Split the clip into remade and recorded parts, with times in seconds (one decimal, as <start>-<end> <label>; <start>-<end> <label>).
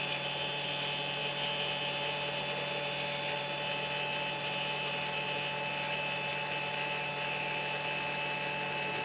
0.0-9.0 recorded